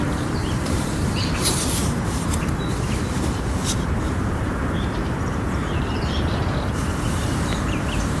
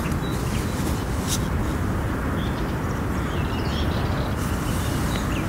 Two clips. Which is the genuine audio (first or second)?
second